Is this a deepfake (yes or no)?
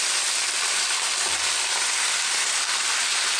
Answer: no